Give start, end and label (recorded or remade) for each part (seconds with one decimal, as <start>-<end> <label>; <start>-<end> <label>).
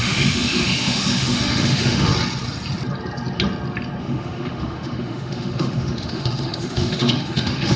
0.0-2.1 remade; 2.1-4.0 recorded; 4.0-7.8 remade